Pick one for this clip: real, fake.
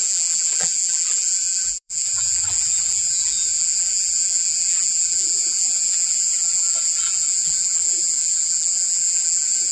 fake